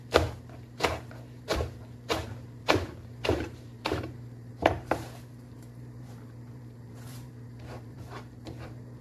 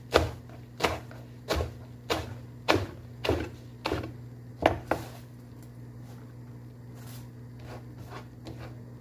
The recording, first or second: second